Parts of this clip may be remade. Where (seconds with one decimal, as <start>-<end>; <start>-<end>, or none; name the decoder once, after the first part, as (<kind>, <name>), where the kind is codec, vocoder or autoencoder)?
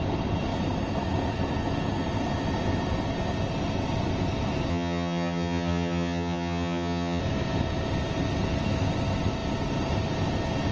4.7-7.2 (vocoder, HiFi-GAN)